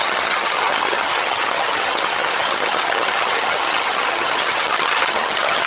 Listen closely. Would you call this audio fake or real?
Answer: fake